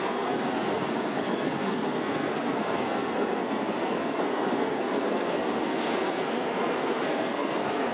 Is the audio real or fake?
fake